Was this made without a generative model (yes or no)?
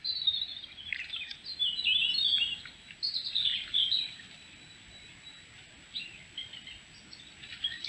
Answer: yes